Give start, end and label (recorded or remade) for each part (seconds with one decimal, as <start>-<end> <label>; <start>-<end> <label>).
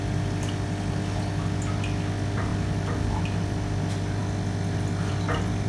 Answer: 0.0-5.7 recorded